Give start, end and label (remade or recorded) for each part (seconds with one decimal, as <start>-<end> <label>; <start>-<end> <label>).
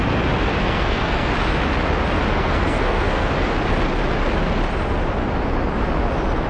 0.0-0.6 recorded; 0.6-1.3 remade; 1.3-2.3 recorded; 2.3-3.3 remade; 3.3-6.5 recorded